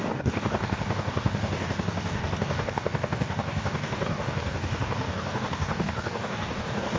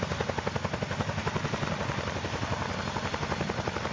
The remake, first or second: first